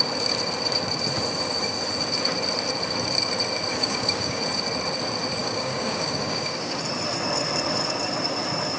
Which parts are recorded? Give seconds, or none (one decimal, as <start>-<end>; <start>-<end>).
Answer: 0.0-3.7; 4.4-5.4; 6.8-8.8